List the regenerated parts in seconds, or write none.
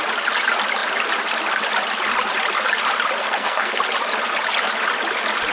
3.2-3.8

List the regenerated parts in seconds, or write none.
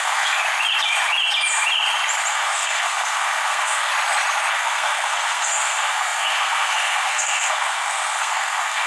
0.0-0.4; 2.3-3.9; 4.5-8.9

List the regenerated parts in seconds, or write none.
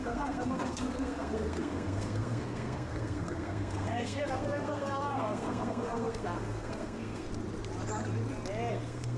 0.0-7.3; 8.7-9.2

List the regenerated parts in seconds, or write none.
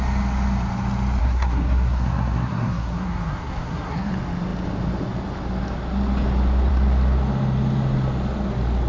1.2-4.1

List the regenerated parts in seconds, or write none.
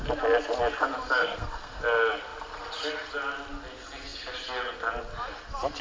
1.2-1.8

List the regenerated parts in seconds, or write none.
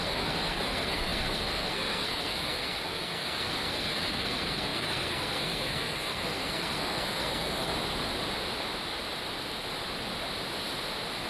0.0-7.7